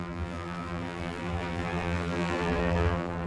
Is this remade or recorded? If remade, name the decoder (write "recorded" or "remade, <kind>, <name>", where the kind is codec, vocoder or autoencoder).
remade, vocoder, BigVGAN v2